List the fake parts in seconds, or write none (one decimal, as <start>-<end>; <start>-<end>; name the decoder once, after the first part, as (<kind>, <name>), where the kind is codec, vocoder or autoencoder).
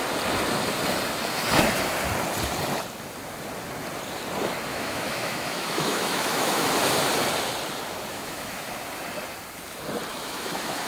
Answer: 4.7-6.7 (autoencoder, DAC-VAE); 8.1-8.7; 10.1-10.9